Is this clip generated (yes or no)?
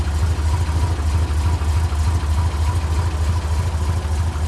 no